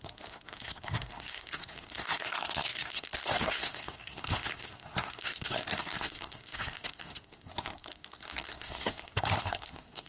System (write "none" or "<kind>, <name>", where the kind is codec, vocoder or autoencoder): codec, SNAC